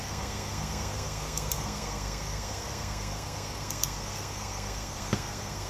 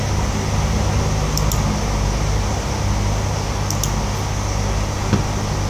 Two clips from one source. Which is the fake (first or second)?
first